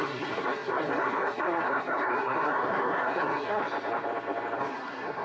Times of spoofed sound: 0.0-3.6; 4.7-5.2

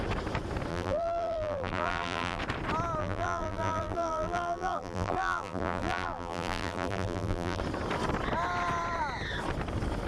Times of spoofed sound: 0.7-2.4; 3.0-7.6

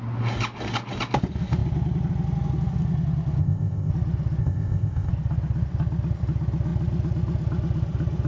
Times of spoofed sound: 3.4-3.9; 4.4-5.1

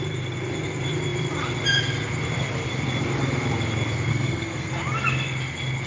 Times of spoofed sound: 4.1-4.7

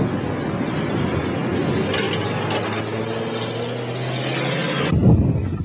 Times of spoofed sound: none